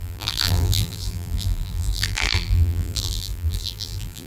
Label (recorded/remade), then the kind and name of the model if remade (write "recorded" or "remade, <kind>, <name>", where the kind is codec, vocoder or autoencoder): remade, vocoder, BigVGAN v2